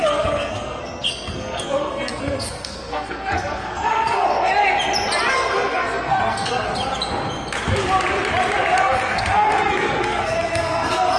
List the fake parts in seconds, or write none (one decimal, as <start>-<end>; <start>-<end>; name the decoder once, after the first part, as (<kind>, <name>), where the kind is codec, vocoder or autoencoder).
0.0-4.5 (codec, SNAC); 5.3-6.7; 8.8-11.2